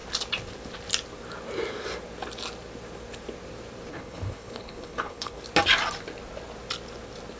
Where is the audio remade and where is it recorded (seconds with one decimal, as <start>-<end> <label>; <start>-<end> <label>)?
0.0-3.9 recorded; 3.9-5.4 remade; 5.4-7.4 recorded